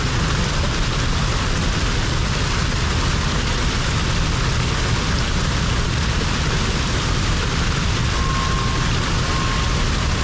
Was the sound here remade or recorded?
recorded